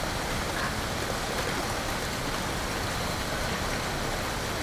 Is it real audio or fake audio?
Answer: real